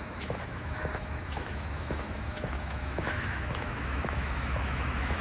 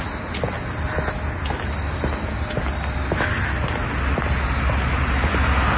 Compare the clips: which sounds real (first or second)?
second